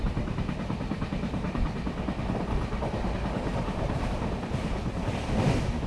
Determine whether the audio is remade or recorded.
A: remade